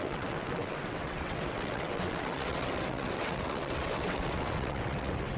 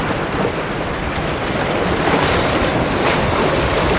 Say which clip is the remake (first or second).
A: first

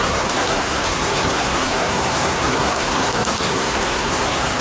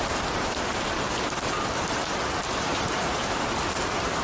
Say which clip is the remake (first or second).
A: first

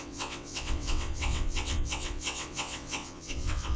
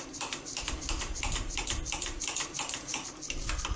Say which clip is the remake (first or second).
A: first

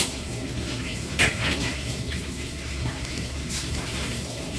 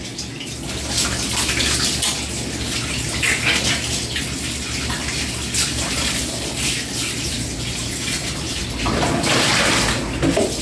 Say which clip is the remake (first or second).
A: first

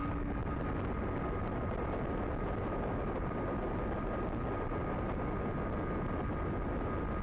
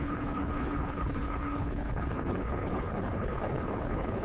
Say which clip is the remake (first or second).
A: second